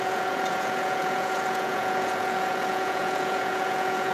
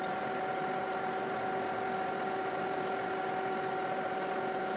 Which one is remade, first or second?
first